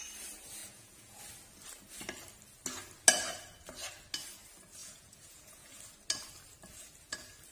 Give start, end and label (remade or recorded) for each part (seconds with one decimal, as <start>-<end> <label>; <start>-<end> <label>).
0.0-0.6 recorded; 0.6-1.2 remade; 1.2-4.8 recorded; 4.8-5.8 remade; 5.8-7.5 recorded